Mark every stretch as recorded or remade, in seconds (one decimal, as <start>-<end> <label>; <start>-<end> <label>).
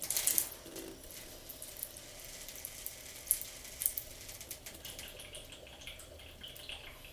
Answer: 0.0-7.1 recorded